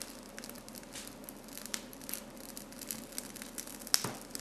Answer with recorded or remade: recorded